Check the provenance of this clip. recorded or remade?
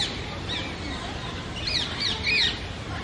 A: recorded